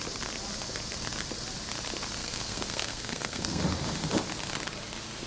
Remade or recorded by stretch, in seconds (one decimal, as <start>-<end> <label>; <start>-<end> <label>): 0.0-2.2 recorded; 2.2-3.6 remade; 3.6-5.3 recorded